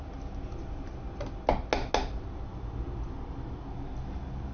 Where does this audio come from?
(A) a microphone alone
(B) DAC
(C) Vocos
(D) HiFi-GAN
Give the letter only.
A